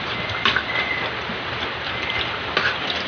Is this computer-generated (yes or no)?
no